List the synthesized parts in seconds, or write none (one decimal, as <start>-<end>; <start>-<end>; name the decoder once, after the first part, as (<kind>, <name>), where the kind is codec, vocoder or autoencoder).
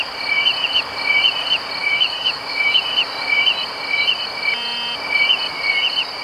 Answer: 1.8-2.8 (autoencoder, DAC-VAE)